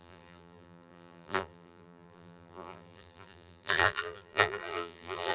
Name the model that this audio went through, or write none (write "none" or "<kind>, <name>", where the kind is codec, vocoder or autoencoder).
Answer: vocoder, BigVGAN v2